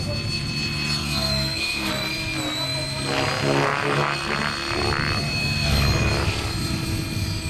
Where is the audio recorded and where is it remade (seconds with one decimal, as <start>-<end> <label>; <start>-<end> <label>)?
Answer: 0.0-1.0 recorded; 1.0-1.9 remade; 1.9-7.5 recorded